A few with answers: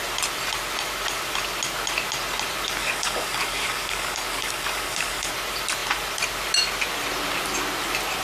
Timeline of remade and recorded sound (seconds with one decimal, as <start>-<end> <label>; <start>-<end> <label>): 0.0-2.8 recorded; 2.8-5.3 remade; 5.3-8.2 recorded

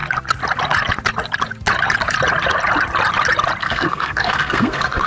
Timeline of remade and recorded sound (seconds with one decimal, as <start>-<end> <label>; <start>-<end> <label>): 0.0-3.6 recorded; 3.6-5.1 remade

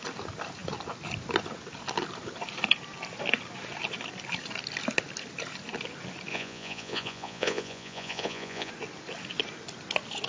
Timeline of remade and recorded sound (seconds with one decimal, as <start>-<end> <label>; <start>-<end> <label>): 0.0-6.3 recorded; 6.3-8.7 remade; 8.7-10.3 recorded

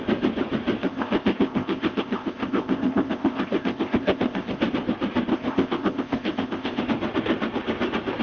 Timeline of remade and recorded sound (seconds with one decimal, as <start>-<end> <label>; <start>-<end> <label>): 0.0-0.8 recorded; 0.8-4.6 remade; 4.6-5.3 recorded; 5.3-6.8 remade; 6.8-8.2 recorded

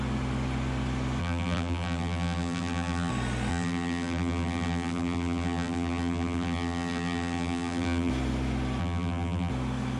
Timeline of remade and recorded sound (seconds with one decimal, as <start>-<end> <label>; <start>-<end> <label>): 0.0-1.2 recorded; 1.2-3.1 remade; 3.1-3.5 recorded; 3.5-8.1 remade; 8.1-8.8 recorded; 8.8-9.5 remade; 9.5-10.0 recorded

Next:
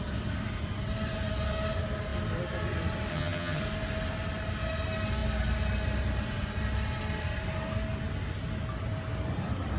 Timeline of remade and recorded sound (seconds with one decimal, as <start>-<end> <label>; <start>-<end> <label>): 0.0-3.1 recorded; 3.1-3.6 remade; 3.6-9.8 recorded